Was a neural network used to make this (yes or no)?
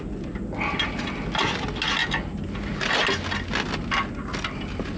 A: no